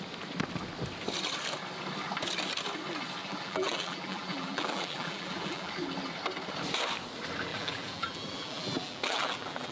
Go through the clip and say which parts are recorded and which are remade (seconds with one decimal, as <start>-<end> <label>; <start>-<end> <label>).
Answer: 0.0-3.2 recorded; 3.2-5.7 remade; 5.7-7.5 recorded; 7.5-9.7 remade